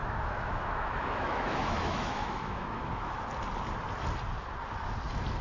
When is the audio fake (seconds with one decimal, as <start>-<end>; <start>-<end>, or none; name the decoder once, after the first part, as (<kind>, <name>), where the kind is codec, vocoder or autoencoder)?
0.0-3.2 (autoencoder, DAC-VAE)